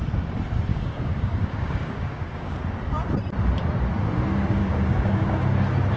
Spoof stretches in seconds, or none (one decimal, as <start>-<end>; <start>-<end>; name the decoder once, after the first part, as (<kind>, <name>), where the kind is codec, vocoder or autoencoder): 0.7-2.6 (codec, DAC); 4.6-5.4